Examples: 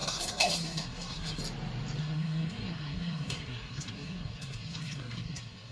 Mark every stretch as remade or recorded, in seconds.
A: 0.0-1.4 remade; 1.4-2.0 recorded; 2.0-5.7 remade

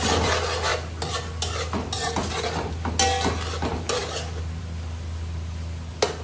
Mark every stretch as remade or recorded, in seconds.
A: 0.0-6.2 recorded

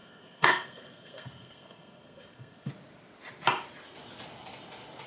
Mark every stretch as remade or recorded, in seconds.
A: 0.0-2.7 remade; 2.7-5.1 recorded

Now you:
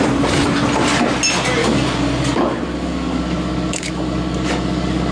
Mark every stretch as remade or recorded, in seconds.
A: 0.0-1.6 recorded; 1.6-5.1 remade

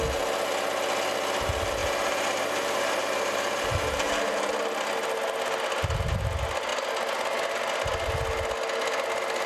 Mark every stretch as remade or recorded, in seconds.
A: 0.0-1.8 recorded; 1.8-4.5 remade; 4.5-9.5 recorded

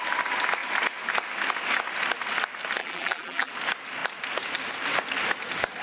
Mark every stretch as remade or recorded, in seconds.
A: 0.0-2.8 recorded; 2.8-3.5 remade; 3.5-5.8 recorded

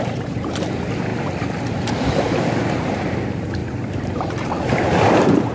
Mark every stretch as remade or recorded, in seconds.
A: 0.0-1.1 remade; 1.1-2.0 recorded; 2.0-5.5 remade